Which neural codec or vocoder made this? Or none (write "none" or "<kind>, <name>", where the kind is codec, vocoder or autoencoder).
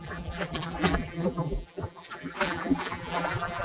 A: vocoder, BigVGAN v2